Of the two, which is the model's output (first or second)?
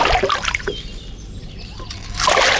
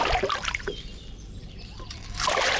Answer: second